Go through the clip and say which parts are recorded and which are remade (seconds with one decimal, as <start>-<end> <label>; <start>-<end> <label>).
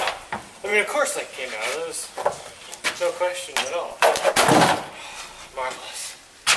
0.0-6.6 recorded